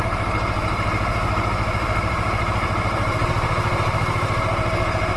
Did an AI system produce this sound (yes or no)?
yes